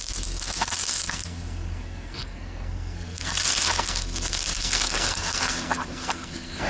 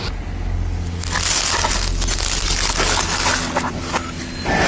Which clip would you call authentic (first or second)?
second